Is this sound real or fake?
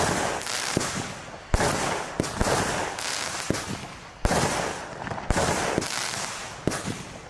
real